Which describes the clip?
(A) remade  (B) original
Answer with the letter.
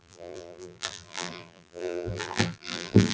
A